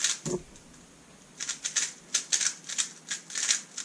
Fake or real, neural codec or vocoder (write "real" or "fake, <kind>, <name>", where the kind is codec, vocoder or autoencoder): real